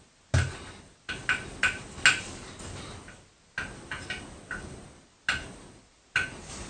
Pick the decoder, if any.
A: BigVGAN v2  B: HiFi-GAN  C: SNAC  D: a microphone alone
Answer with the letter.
D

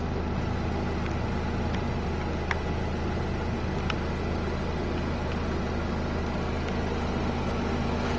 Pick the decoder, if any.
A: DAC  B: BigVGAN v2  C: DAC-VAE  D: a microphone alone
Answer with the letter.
D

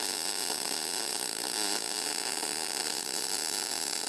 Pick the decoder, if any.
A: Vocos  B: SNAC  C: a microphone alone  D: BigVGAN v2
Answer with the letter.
D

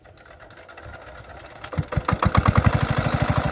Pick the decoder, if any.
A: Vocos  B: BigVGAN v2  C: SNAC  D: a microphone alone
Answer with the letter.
D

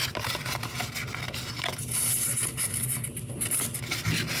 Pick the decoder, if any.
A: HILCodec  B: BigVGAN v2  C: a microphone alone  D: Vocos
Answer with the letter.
C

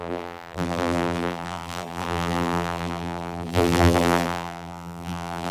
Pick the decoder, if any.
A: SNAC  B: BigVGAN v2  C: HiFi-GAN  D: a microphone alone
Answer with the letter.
B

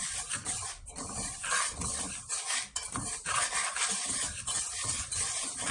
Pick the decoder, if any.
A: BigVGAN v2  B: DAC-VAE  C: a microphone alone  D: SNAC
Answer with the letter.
A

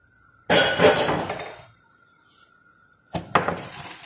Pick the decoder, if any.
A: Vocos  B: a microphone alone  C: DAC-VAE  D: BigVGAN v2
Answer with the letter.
B